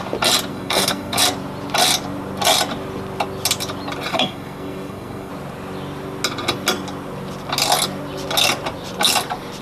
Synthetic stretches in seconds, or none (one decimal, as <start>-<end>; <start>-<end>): 0.5-1.2; 4.1-5.3